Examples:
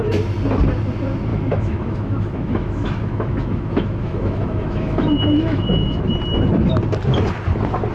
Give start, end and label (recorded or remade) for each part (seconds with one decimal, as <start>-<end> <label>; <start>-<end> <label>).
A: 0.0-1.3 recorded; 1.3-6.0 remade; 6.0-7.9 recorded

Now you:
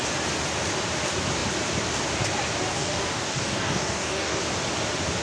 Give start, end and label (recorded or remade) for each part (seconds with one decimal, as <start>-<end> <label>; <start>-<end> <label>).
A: 0.0-2.7 recorded; 2.7-4.4 remade; 4.4-5.2 recorded

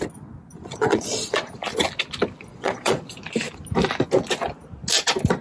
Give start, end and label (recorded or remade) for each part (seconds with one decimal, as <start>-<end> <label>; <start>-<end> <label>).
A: 0.0-0.6 recorded; 0.6-1.5 remade; 1.5-2.5 recorded; 2.5-3.0 remade; 3.0-5.4 recorded